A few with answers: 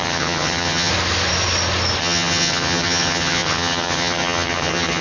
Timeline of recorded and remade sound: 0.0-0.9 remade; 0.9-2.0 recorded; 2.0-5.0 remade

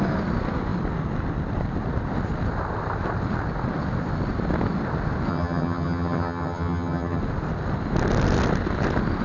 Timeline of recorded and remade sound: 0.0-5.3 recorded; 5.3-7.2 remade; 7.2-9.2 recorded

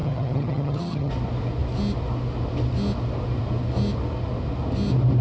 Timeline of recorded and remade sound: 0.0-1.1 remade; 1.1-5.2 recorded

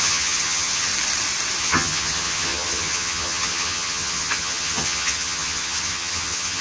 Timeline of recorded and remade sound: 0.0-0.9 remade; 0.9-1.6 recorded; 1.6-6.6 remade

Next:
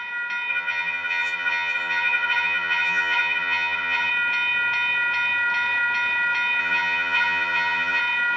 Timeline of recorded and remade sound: 0.0-0.5 recorded; 0.5-4.1 remade; 4.1-6.6 recorded; 6.6-8.0 remade; 8.0-8.4 recorded

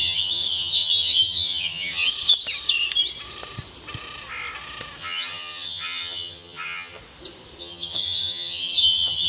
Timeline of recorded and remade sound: 0.0-2.1 remade; 2.1-5.0 recorded; 5.0-7.0 remade; 7.0-7.6 recorded; 7.6-9.3 remade

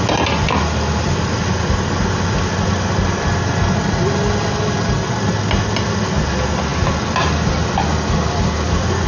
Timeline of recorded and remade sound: 0.0-9.1 recorded